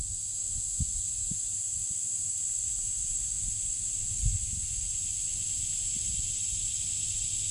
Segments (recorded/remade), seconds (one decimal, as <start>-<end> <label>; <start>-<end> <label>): 0.0-7.5 recorded